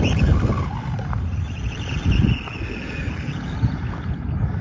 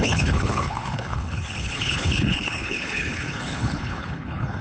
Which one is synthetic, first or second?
second